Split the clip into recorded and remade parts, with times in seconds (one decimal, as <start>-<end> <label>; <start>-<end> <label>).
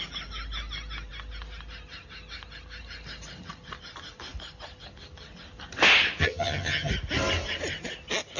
0.0-6.2 recorded; 6.2-6.9 remade; 6.9-8.4 recorded